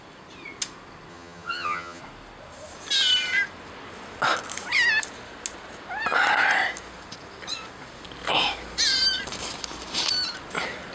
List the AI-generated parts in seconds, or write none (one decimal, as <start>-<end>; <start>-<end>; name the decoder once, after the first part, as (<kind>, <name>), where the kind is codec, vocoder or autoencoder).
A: 1.1-2.0 (vocoder, HiFi-GAN)